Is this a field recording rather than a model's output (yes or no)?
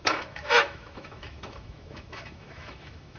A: no